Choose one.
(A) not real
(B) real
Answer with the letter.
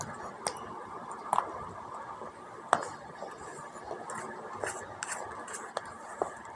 B